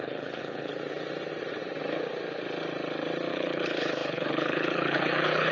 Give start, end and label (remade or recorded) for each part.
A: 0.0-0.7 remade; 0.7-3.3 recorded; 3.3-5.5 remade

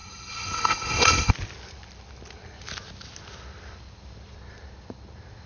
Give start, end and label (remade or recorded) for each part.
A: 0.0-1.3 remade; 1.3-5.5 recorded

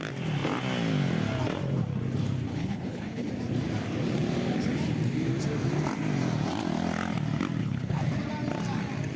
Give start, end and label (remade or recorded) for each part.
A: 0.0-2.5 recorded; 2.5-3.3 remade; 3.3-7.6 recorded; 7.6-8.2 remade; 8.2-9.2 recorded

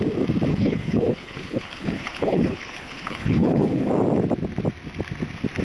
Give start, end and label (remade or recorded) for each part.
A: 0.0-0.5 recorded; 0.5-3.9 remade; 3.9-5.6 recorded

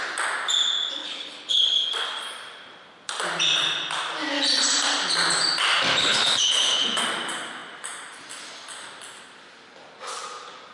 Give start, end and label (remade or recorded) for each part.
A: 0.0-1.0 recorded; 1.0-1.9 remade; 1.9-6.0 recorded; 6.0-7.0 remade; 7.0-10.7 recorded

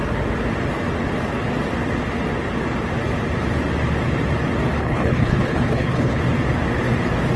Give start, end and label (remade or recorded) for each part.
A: 0.0-4.8 recorded; 4.8-6.2 remade; 6.2-7.4 recorded

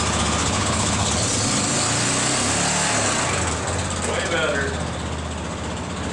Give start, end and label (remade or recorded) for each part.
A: 0.0-0.4 recorded; 0.4-1.1 remade; 1.1-6.1 recorded